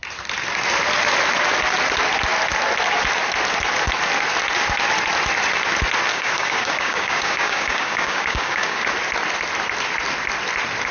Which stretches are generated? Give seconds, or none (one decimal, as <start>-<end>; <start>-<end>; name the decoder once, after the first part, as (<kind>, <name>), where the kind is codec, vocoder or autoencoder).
6.1-8.9 (codec, DAC)